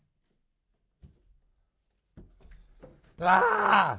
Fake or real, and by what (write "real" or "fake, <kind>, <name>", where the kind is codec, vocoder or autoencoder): real